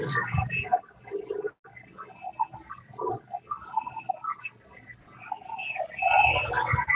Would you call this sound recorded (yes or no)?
yes